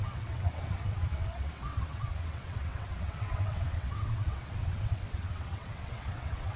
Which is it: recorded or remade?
remade